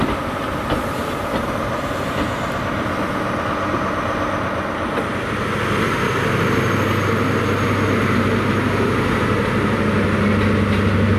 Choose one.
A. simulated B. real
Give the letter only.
B